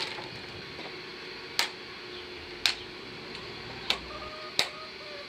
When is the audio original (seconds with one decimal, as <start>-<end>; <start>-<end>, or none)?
0.0-5.3